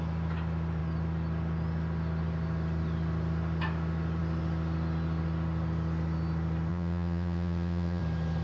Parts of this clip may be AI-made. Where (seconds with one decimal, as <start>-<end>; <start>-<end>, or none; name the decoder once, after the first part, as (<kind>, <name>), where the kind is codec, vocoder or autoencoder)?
6.7-8.0 (vocoder, Vocos)

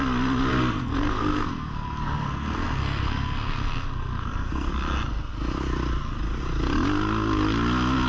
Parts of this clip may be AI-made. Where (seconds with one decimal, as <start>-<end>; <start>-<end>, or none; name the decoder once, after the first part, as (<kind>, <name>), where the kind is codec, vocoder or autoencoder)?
0.5-4.7 (codec, SNAC)

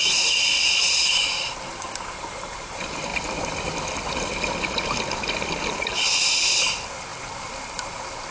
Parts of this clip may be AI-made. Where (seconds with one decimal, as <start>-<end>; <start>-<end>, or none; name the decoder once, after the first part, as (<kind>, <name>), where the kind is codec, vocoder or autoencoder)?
none

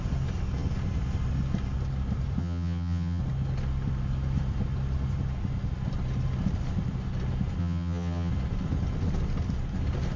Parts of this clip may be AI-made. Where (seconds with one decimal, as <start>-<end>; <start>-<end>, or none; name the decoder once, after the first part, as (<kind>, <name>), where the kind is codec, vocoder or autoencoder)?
2.4-3.2 (vocoder, HiFi-GAN); 7.6-8.3

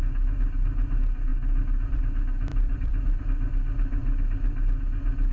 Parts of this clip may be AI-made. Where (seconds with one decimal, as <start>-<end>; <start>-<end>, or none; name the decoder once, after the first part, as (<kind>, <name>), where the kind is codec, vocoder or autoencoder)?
1.3-2.0 (vocoder, BigVGAN v2); 2.5-3.2

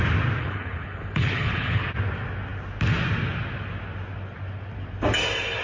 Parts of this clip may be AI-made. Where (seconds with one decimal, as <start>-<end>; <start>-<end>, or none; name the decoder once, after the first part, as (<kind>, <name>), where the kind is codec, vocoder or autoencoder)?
0.4-1.8 (codec, HILCodec)

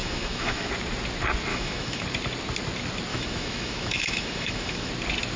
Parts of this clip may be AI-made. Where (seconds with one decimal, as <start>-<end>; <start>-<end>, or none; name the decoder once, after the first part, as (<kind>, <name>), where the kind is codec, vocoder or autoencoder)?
0.0-0.7 (autoencoder, DAC-VAE); 1.5-2.0; 3.1-4.9

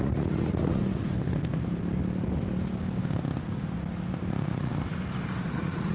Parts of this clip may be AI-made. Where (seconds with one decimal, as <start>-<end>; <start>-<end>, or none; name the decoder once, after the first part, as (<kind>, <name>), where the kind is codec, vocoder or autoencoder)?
0.0-0.8 (vocoder, Vocos); 4.3-4.7; 5.5-5.9